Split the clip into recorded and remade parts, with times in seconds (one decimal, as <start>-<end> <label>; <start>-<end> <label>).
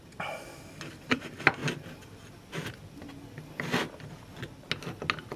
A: 0.0-5.4 recorded